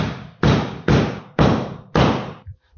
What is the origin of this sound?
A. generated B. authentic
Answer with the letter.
B